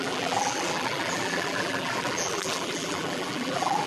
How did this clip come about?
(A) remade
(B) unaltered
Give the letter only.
A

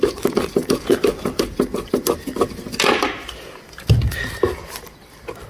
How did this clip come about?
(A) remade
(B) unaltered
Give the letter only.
B